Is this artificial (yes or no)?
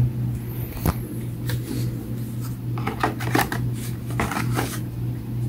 no